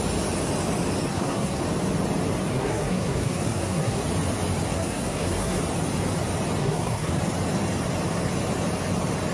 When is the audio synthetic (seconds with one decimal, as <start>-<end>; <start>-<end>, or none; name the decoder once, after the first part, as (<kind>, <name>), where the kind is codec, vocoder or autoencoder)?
1.1-1.6 (codec, SNAC); 2.5-4.0; 4.7-5.6; 6.6-7.2